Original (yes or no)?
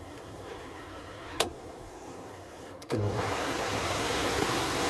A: no